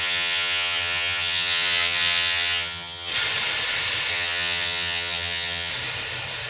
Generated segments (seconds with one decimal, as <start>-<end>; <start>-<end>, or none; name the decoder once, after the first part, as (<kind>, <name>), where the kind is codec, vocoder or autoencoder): 0.0-3.1 (vocoder, HiFi-GAN); 4.1-5.7